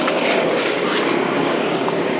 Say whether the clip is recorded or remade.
remade